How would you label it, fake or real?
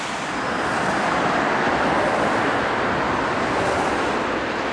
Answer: real